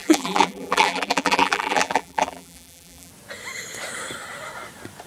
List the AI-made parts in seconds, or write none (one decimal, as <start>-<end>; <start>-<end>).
0.0-3.1

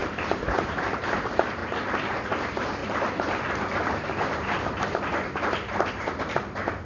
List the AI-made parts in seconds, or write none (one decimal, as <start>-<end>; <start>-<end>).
0.0-1.6; 2.4-2.8

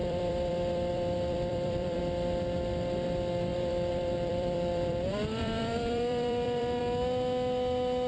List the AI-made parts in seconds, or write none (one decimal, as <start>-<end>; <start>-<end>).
0.0-2.0; 3.5-6.8